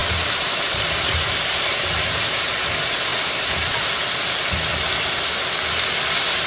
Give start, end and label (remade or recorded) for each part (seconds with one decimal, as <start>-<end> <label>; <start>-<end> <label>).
0.0-2.2 remade; 2.2-3.1 recorded; 3.1-3.9 remade; 3.9-6.5 recorded